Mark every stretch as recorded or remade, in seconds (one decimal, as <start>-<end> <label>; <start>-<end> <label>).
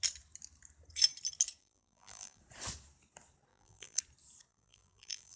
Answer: 0.0-1.6 recorded; 1.6-2.4 remade; 2.4-3.5 recorded; 3.5-4.0 remade; 4.0-4.5 recorded; 4.5-5.4 remade